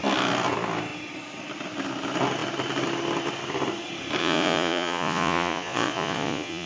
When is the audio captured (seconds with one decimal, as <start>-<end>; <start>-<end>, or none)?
0.0-4.2